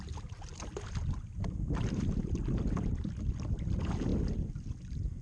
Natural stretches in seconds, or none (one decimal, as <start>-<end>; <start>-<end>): 0.0-5.2